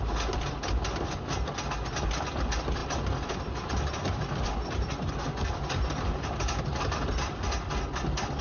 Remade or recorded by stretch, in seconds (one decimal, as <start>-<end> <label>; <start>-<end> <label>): 0.0-8.4 recorded